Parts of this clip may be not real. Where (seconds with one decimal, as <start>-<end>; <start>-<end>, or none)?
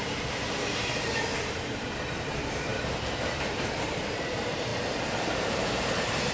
0.0-6.3